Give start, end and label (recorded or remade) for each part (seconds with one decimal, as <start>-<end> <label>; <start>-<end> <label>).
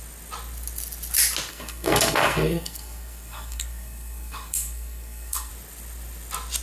0.0-1.5 recorded; 1.5-5.5 remade; 5.5-6.6 recorded